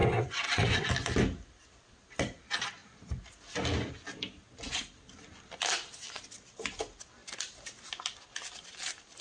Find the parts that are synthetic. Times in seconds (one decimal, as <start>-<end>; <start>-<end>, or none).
0.0-0.9